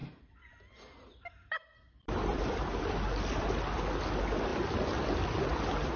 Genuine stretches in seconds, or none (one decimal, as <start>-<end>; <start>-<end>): 3.6-6.0